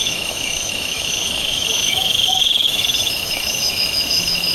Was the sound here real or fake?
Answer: fake